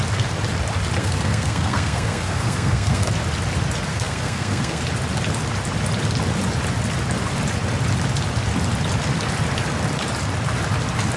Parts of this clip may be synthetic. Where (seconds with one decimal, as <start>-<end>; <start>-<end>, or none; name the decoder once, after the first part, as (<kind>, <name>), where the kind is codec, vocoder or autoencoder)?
1.0-3.1 (codec, SNAC); 3.9-4.8